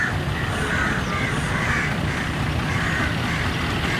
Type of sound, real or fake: real